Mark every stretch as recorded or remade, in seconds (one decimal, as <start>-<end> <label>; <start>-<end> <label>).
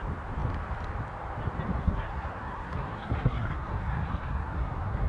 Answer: 0.0-1.8 recorded; 1.8-5.1 remade